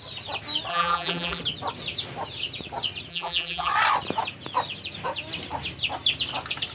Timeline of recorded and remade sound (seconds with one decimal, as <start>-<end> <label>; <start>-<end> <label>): 0.0-0.7 recorded; 0.7-1.4 remade; 1.4-3.1 recorded; 3.1-3.7 remade; 3.7-6.7 recorded